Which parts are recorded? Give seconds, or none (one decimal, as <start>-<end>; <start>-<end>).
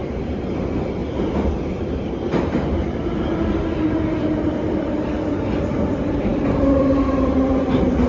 none